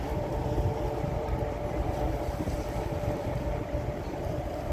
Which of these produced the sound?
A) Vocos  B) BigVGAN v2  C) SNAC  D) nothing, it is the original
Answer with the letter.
B